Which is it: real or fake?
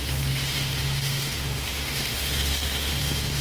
fake